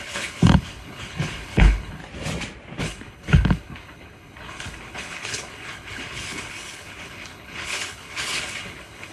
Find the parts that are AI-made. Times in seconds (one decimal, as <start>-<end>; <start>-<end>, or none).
0.0-2.0; 2.8-9.1